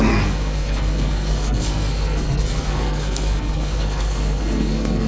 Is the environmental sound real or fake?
fake